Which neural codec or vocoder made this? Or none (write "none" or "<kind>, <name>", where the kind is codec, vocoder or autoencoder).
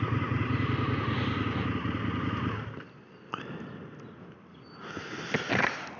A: none